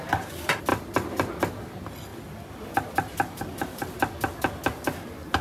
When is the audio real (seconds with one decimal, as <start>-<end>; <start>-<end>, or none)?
0.0-5.4